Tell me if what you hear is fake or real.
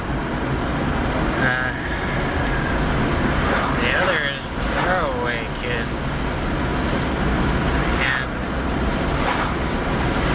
real